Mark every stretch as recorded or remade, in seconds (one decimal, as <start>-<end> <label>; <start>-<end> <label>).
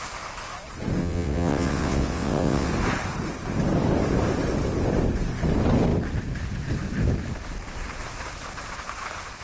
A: 0.0-1.0 recorded; 1.0-2.7 remade; 2.7-9.4 recorded